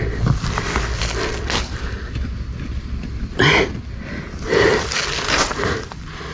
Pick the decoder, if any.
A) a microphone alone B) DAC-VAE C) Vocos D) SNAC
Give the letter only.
A